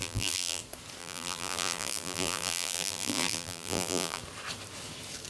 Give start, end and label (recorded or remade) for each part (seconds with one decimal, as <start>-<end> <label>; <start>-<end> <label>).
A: 0.0-0.6 remade; 0.6-1.0 recorded; 1.0-4.2 remade; 4.2-5.3 recorded